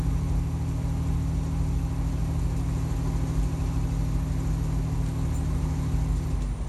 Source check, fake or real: real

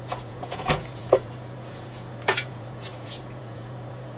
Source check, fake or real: fake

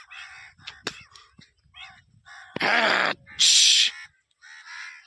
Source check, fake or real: real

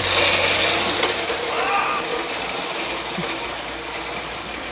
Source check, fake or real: real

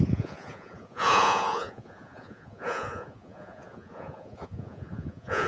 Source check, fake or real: fake